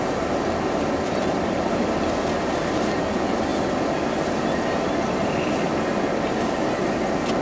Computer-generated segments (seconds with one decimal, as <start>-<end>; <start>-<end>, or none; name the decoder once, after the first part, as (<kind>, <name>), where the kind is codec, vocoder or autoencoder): none